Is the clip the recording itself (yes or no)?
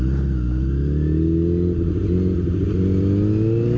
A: yes